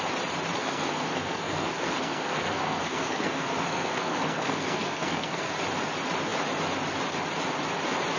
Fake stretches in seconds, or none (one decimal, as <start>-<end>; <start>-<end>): 0.6-5.5